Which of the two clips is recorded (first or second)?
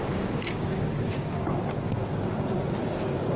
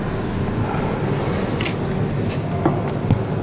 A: second